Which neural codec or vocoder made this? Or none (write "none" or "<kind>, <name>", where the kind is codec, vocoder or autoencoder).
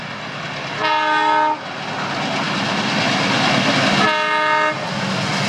none